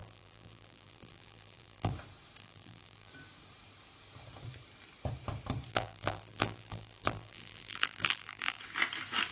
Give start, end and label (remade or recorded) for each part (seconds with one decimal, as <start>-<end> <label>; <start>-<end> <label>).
0.0-1.9 remade; 1.9-2.4 recorded; 2.4-3.1 remade; 3.1-5.7 recorded; 5.7-8.6 remade; 8.6-9.3 recorded